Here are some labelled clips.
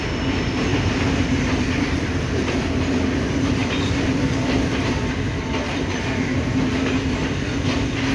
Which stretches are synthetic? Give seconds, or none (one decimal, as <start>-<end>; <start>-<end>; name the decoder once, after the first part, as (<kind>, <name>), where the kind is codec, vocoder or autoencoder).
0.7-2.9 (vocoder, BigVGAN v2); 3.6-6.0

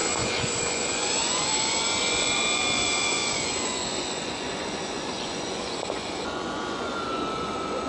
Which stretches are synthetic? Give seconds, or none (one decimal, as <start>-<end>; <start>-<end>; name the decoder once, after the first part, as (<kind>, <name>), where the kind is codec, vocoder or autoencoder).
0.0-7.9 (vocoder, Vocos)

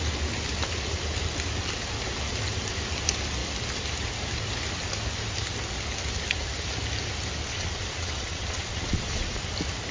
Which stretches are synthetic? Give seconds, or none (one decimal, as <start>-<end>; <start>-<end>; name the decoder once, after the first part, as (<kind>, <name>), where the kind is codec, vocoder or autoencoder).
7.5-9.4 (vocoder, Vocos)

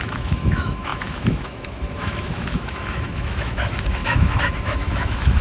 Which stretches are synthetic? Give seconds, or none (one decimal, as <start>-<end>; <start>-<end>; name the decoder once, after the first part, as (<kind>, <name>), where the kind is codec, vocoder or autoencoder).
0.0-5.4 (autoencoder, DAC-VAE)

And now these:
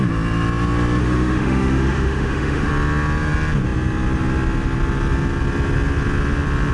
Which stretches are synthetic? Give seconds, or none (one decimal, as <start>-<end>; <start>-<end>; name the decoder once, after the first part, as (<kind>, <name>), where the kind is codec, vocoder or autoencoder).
1.0-2.7 (autoencoder, DAC-VAE)

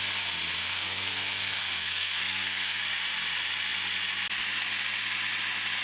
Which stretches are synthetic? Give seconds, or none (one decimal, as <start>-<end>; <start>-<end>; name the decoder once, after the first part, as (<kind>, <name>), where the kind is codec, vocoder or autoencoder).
0.6-2.8 (codec, SNAC)